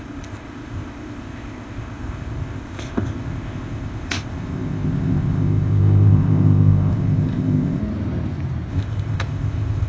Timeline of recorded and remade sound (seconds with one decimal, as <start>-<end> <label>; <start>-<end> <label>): 0.0-7.8 remade; 7.8-8.7 recorded; 8.7-9.9 remade